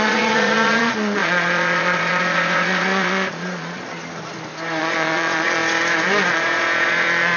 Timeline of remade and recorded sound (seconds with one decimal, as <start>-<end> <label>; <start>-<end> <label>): 0.0-4.0 remade; 4.0-4.8 recorded; 4.8-5.6 remade; 5.6-6.3 recorded; 6.3-7.4 remade